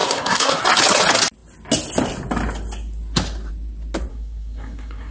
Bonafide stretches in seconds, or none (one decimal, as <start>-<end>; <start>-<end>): 0.6-4.1